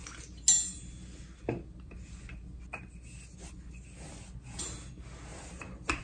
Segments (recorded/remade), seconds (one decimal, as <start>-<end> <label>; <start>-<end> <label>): 0.0-6.0 recorded